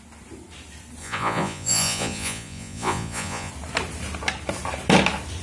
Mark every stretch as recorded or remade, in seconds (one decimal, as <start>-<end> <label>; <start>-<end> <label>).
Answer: 0.0-1.0 recorded; 1.0-3.5 remade; 3.5-5.4 recorded